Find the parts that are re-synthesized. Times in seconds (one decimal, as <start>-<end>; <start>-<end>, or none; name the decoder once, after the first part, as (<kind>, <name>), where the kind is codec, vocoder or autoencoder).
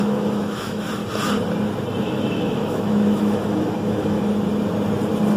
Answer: 0.0-1.0 (autoencoder, DAC-VAE); 2.0-4.3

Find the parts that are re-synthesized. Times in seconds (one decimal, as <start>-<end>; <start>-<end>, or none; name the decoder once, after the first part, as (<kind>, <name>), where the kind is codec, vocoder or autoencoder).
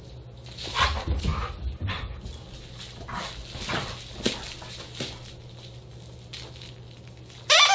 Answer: none